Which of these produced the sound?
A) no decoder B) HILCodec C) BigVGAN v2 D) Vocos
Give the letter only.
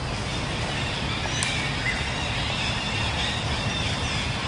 A